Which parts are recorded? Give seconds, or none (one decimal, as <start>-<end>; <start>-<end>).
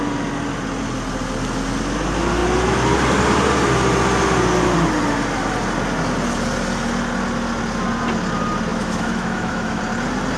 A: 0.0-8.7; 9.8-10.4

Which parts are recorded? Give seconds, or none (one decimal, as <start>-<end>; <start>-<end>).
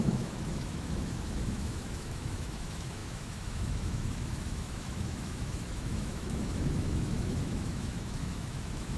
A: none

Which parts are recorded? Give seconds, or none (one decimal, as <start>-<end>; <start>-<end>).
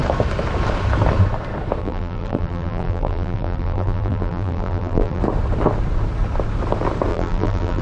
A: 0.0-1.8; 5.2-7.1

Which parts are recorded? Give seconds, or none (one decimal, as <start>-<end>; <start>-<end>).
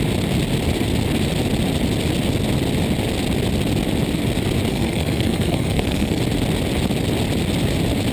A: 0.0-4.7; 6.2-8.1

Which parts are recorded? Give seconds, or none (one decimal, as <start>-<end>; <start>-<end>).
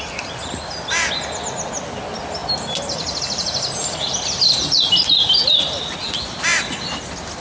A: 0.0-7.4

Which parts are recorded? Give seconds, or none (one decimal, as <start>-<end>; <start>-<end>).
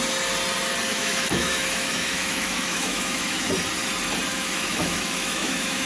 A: 0.0-0.9; 3.5-4.3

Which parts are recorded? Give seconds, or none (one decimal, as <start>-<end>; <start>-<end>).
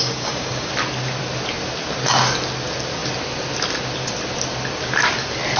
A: 0.7-5.6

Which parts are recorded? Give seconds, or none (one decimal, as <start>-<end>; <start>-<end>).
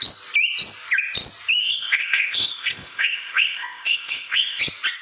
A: 0.0-1.6; 4.6-5.0